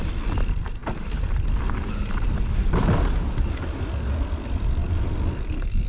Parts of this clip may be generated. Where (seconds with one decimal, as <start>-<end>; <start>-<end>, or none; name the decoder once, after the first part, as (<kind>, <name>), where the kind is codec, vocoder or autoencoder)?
0.0-0.8 (vocoder, BigVGAN v2); 4.3-5.9